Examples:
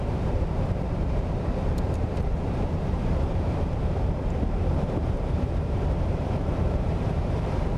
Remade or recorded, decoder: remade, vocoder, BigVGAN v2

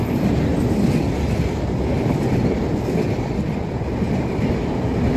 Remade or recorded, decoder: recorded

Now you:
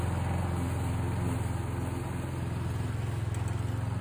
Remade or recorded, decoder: recorded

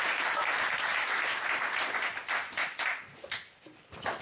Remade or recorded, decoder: recorded